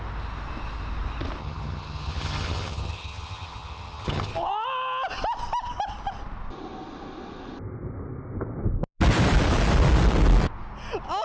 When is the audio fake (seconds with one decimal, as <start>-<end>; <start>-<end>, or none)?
1.4-4.3